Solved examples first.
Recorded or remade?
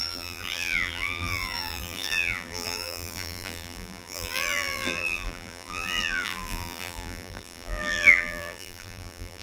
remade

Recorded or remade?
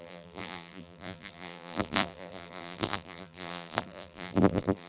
remade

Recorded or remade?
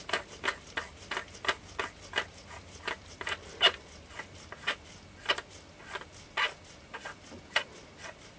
recorded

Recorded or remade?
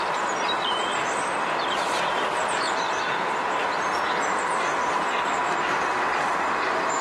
remade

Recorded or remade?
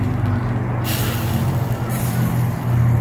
recorded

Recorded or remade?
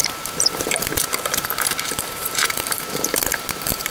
remade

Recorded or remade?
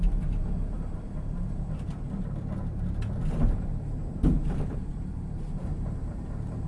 remade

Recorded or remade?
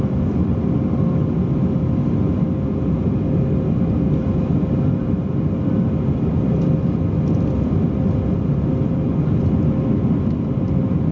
recorded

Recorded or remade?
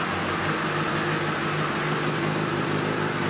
recorded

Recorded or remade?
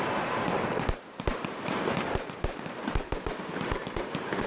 remade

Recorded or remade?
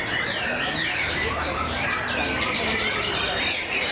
remade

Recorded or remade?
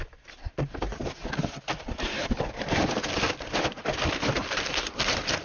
remade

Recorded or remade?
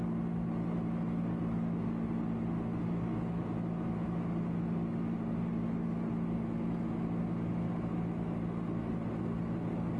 recorded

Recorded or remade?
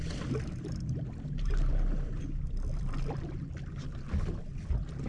remade